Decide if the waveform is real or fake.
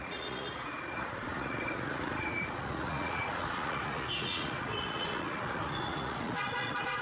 fake